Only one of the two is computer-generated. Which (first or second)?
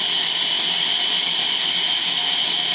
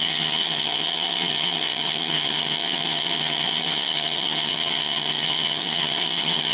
second